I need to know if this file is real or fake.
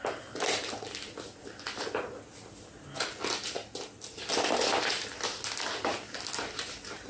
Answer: real